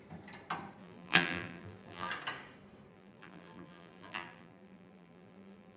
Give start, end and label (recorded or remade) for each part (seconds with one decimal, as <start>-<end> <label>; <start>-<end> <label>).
0.0-0.8 recorded; 0.8-2.1 remade; 2.1-2.9 recorded; 2.9-5.8 remade